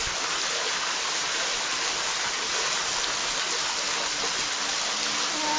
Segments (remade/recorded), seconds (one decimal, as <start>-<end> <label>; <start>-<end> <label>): 0.0-5.6 recorded